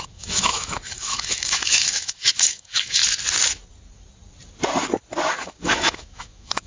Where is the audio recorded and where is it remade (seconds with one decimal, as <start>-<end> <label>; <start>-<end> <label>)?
0.0-3.0 remade; 3.0-5.4 recorded; 5.4-6.7 remade